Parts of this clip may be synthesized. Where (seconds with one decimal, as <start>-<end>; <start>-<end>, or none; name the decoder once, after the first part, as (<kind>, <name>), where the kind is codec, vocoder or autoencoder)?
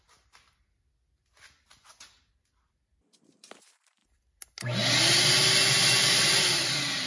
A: none